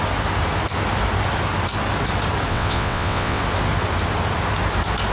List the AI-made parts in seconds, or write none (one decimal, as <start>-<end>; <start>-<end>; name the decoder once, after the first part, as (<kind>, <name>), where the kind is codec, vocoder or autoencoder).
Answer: 2.5-3.4 (vocoder, WaveNeXt)